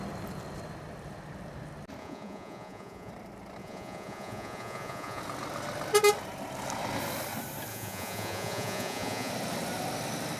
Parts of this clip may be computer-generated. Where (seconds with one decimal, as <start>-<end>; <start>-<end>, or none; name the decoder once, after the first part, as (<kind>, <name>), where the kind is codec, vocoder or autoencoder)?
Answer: 2.0-3.1 (vocoder, Vocos); 3.6-5.2; 7.7-9.3